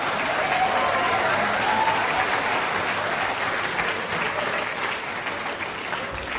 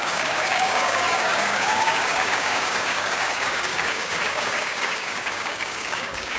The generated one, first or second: second